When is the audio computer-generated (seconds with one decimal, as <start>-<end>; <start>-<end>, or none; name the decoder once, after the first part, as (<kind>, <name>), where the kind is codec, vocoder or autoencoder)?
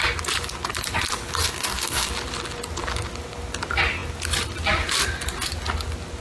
1.4-2.1 (codec, DAC)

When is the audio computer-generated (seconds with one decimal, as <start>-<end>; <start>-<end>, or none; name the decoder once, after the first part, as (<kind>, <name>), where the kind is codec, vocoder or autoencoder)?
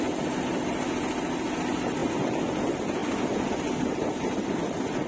none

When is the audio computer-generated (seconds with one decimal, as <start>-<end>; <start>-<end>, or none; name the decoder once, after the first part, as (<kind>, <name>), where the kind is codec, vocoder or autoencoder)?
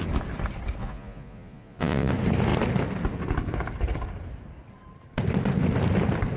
0.8-2.1 (vocoder, Vocos)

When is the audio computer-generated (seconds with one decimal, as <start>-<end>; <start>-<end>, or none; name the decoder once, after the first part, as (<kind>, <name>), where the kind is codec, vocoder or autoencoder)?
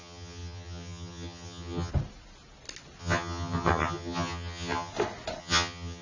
0.0-1.9 (vocoder, HiFi-GAN); 3.0-4.9; 5.4-6.0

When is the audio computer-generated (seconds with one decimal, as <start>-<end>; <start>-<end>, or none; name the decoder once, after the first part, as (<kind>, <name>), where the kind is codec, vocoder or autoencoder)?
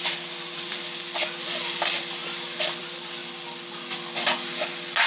0.0-2.2 (vocoder, BigVGAN v2); 2.8-3.2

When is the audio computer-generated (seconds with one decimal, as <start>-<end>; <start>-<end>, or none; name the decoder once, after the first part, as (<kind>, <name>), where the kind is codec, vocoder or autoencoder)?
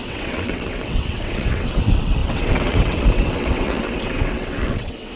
0.0-5.2 (vocoder, WaveNeXt)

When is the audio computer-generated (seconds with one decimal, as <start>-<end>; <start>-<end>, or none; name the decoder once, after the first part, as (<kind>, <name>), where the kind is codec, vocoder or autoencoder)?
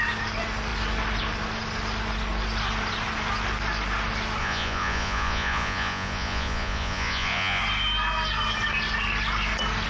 4.4-7.6 (vocoder, Vocos)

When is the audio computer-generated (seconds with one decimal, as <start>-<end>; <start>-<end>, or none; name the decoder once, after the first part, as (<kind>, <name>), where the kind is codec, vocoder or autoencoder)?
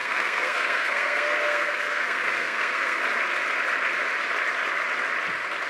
0.0-3.0 (codec, SNAC)